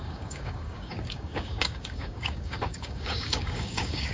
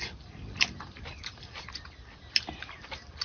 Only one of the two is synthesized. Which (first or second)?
first